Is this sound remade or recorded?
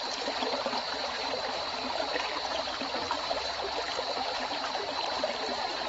remade